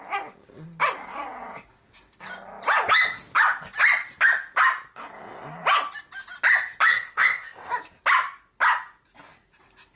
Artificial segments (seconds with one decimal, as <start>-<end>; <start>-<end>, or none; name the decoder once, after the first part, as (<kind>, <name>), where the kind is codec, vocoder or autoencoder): 6.9-7.7 (codec, ZipCodec)